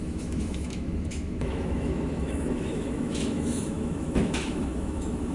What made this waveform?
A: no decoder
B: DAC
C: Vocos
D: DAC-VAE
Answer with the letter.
D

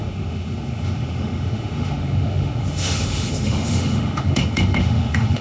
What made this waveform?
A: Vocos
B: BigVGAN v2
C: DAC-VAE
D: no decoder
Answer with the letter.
C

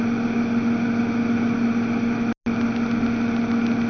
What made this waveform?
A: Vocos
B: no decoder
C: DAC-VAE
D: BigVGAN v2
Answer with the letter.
B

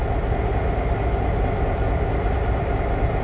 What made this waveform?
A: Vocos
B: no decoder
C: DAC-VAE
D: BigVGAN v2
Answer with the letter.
B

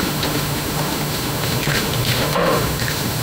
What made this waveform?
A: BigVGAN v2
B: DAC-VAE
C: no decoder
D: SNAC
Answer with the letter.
B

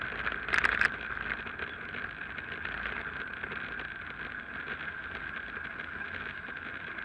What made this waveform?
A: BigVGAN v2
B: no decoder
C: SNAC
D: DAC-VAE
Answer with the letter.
B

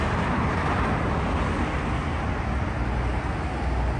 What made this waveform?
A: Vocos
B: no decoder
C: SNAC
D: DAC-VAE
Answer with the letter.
B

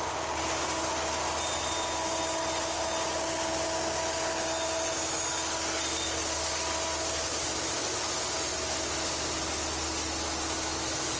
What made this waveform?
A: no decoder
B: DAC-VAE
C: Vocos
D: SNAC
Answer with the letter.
A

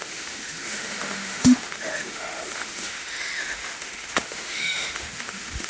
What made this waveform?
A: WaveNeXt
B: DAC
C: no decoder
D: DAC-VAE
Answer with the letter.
D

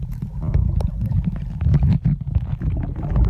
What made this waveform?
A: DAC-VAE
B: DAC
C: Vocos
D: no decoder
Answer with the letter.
D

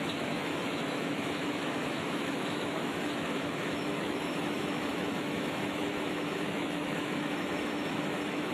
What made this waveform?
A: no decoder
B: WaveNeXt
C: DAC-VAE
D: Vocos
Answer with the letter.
C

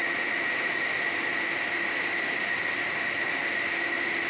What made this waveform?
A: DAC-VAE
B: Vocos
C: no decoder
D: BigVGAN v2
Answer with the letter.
C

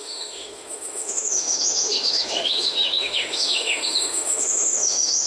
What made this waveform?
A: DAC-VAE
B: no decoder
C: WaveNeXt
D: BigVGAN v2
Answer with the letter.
A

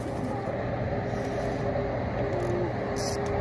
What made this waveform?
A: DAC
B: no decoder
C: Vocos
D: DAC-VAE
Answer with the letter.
B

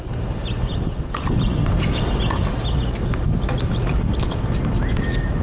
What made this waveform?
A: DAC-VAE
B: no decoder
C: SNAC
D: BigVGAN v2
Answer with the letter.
B